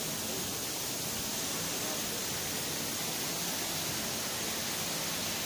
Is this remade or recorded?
recorded